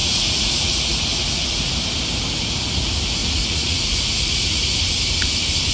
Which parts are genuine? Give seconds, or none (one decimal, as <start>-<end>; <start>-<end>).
1.7-3.2; 4.6-5.7